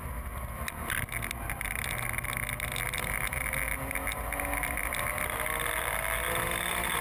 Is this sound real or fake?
real